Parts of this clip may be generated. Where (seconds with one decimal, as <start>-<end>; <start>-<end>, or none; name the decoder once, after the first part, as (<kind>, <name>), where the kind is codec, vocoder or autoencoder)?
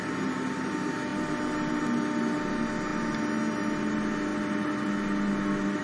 none